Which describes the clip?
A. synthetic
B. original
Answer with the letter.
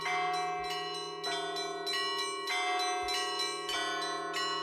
B